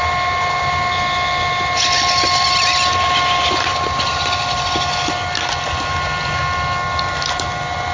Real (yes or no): yes